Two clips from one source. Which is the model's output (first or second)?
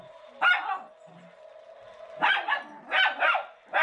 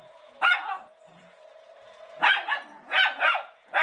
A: second